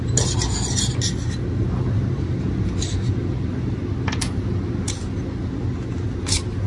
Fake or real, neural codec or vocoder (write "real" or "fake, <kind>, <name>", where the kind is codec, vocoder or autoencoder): real